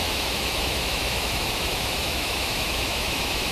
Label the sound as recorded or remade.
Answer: remade